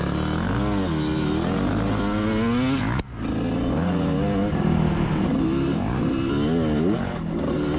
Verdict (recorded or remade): recorded